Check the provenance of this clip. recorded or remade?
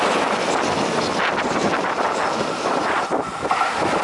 remade